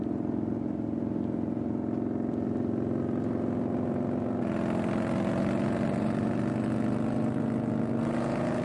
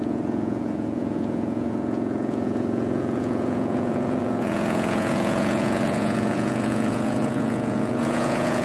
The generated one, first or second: second